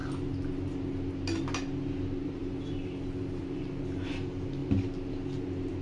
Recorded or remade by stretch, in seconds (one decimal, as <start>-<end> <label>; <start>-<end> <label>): 0.0-5.8 recorded

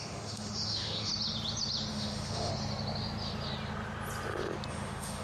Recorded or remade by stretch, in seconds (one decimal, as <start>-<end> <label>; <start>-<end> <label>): 0.0-1.1 remade; 1.1-1.9 recorded; 1.9-2.5 remade; 2.5-4.7 recorded; 4.7-5.2 remade